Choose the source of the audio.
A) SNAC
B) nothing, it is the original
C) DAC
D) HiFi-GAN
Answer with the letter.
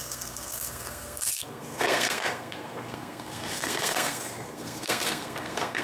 A